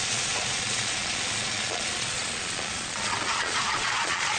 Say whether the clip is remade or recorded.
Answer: remade